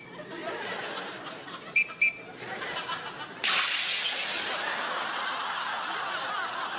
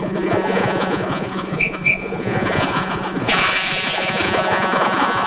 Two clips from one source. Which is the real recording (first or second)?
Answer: first